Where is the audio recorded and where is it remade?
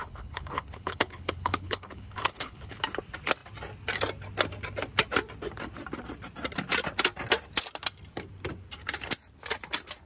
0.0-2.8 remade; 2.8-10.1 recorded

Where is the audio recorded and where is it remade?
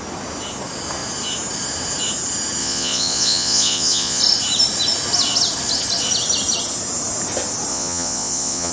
0.0-2.6 recorded; 2.6-4.2 remade; 4.2-7.7 recorded; 7.7-8.7 remade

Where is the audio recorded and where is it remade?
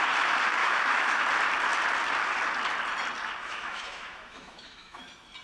0.0-0.6 recorded; 0.6-1.2 remade; 1.2-3.4 recorded; 3.4-5.0 remade; 5.0-5.4 recorded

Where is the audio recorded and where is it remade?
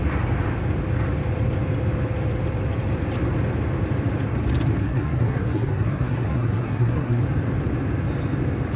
0.0-4.8 recorded; 4.8-7.2 remade; 7.2-8.8 recorded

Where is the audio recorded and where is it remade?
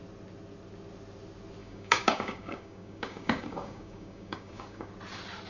0.0-1.6 recorded; 1.6-4.9 remade; 4.9-5.5 recorded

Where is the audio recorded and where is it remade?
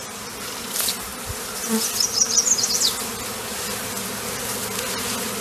0.0-5.4 recorded